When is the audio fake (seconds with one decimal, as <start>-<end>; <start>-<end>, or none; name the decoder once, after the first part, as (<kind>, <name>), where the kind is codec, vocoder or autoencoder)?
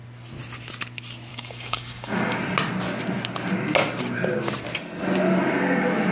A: 1.3-2.4 (codec, DAC)